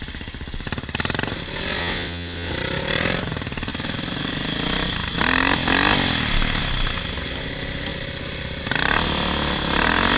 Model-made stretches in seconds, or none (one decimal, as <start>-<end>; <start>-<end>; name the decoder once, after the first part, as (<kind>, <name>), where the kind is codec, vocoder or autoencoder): 1.8-2.5 (vocoder, WaveNeXt)